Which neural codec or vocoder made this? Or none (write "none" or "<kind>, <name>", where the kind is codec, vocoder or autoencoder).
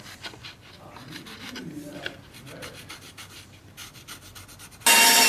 none